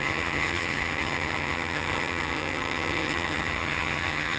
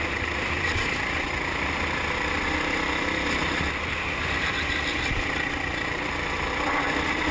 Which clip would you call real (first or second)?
second